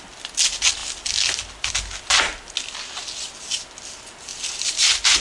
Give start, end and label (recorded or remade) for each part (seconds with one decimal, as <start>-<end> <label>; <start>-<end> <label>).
0.0-4.3 recorded; 4.3-5.2 remade